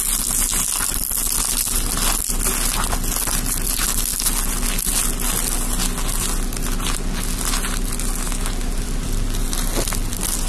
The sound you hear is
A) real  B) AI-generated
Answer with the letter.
A